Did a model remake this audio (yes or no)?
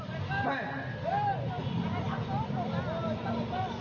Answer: no